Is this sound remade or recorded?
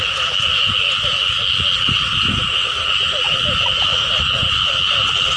recorded